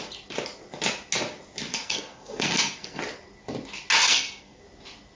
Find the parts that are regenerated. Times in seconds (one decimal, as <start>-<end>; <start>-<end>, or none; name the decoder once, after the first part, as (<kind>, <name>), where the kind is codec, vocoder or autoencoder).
1.7-3.0 (codec, SNAC); 4.0-4.6